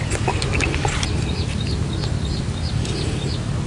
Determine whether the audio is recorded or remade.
recorded